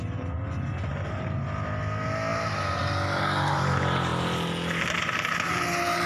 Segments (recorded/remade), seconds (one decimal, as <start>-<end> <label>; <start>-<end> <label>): 0.0-2.3 recorded; 2.3-3.6 remade; 3.6-6.1 recorded